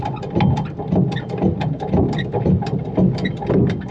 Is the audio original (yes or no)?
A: yes